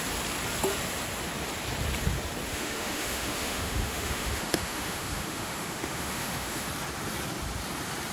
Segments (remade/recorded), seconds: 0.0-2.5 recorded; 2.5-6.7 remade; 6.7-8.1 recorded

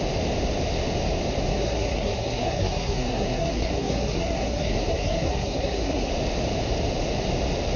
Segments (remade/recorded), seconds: 0.0-1.5 recorded; 1.5-6.1 remade; 6.1-7.8 recorded

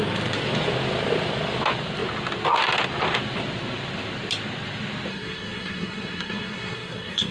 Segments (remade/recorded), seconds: 0.0-5.1 recorded; 5.1-7.3 remade